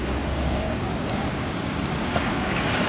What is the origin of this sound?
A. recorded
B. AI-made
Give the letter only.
B